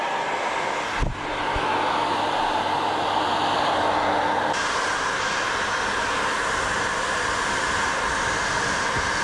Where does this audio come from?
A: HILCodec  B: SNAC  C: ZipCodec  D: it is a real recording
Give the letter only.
D